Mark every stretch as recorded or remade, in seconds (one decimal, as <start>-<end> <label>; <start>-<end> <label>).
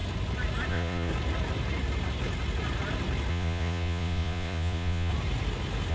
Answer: 0.0-0.7 recorded; 0.7-1.1 remade; 1.1-3.3 recorded; 3.3-5.1 remade; 5.1-5.9 recorded